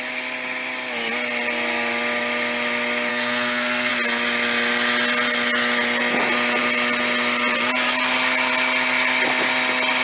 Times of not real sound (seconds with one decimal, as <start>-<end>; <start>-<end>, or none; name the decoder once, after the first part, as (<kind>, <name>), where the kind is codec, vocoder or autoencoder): 3.1-3.9 (codec, SNAC)